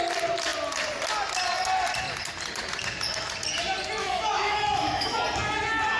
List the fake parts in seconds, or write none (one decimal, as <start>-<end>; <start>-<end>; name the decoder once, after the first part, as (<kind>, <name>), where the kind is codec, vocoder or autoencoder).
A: 4.0-5.2 (autoencoder, DAC-VAE)